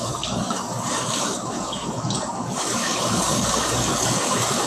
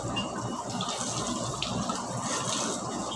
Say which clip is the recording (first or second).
second